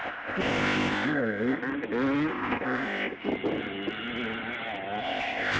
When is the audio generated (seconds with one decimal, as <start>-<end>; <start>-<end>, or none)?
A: 0.0-1.6; 2.3-3.3; 5.0-5.6